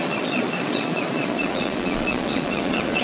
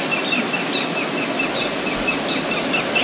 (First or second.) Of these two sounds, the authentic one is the second